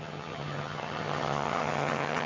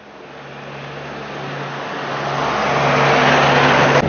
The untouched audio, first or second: second